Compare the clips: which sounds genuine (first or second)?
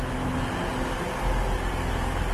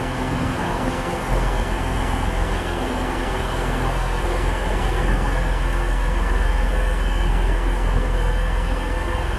first